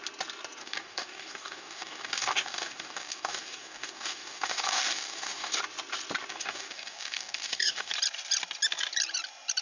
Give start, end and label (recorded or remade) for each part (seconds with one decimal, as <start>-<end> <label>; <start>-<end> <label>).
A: 0.0-0.6 recorded; 0.6-5.6 remade; 5.6-6.3 recorded; 6.3-7.9 remade; 7.9-9.6 recorded